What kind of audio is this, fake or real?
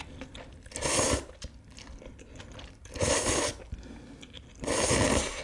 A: real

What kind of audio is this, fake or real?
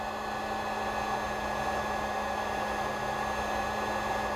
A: real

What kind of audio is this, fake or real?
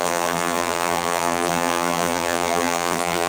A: fake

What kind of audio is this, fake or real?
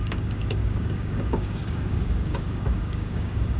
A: fake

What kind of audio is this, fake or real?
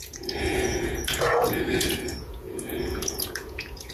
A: fake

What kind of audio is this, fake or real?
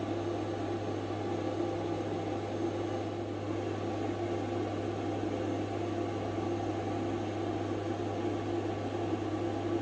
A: real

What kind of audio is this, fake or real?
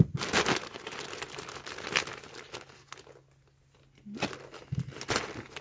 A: real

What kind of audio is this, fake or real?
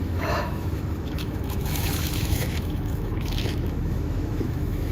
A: fake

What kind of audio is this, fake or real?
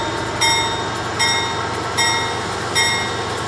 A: real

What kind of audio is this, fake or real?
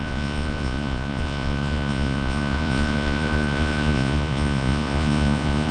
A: fake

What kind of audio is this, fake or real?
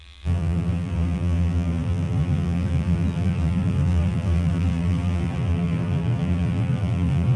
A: fake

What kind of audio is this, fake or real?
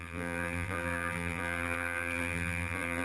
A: fake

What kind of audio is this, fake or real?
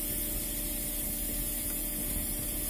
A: real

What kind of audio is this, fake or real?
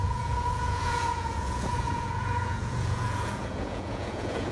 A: fake